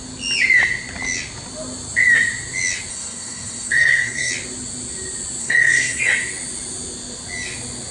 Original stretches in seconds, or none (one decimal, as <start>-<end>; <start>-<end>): 0.0-2.9; 4.3-5.4; 6.0-7.9